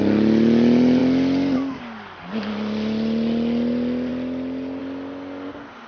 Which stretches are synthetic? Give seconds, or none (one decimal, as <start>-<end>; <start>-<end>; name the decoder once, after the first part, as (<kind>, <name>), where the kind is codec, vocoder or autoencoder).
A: none